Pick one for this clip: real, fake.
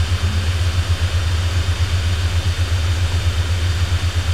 real